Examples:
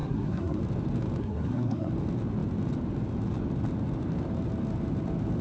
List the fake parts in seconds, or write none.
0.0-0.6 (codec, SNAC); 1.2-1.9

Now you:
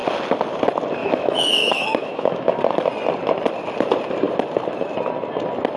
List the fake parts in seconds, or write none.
1.0-2.6 (autoencoder, DAC-VAE)